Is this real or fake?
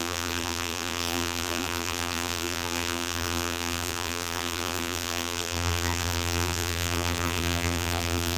fake